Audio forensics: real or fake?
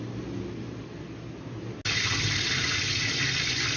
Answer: real